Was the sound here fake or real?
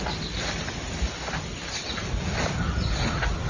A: real